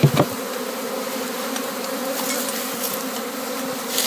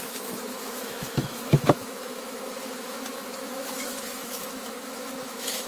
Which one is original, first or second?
first